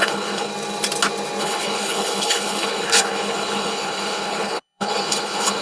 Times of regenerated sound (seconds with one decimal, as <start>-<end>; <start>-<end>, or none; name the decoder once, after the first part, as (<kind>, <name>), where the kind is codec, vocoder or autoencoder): 0.0-0.5 (codec, HILCodec); 1.4-5.6

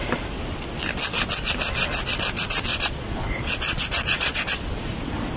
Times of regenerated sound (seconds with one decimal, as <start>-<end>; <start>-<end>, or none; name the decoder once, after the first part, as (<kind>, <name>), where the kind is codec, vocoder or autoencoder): 2.7-4.6 (vocoder, Vocos)

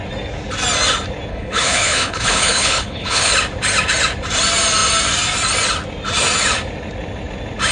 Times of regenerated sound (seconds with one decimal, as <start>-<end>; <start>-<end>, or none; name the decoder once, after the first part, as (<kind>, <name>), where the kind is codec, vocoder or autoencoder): 1.3-3.3 (codec, HILCodec)

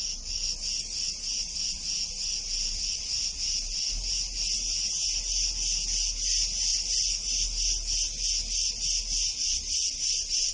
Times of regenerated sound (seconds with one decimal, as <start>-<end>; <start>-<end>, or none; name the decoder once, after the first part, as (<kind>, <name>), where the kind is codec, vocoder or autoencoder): none

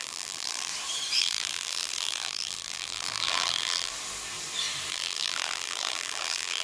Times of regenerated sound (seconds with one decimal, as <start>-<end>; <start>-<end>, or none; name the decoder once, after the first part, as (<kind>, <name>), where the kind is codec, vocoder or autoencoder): 0.0-0.7 (vocoder, BigVGAN v2); 1.2-3.9; 4.9-6.6

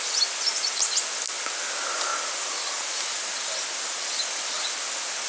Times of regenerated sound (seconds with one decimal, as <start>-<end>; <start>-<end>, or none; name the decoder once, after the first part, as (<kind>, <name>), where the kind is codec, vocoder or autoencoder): none